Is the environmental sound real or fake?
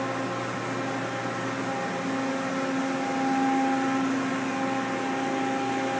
real